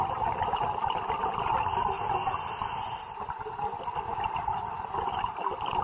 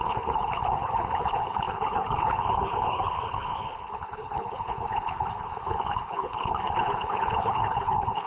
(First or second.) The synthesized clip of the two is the second